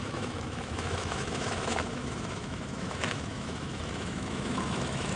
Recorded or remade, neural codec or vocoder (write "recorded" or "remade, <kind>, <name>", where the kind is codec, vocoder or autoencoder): remade, autoencoder, DAC-VAE